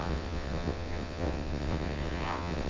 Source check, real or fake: fake